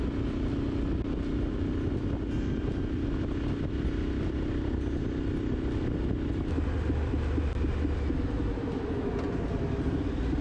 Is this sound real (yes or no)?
yes